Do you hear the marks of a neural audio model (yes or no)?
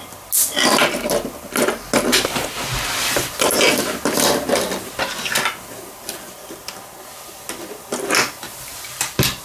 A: no